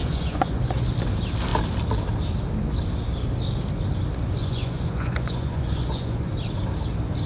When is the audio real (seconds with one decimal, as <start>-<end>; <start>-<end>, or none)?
0.6-4.4; 6.3-7.3